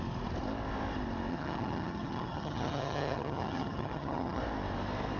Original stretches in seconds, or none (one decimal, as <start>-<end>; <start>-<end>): 0.0-1.3; 4.4-5.2